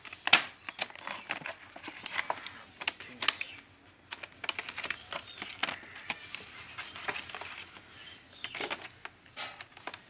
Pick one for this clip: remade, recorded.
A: recorded